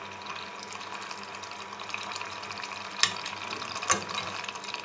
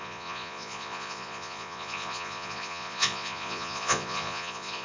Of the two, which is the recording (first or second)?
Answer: first